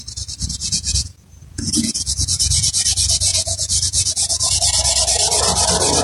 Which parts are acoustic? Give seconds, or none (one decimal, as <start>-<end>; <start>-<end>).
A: 0.0-0.6; 2.7-3.3; 4.5-6.0